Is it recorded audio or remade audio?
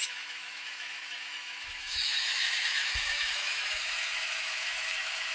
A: remade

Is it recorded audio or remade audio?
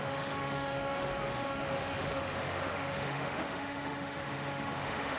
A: remade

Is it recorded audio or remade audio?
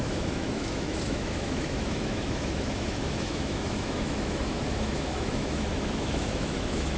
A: remade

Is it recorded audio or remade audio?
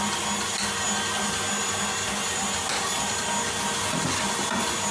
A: recorded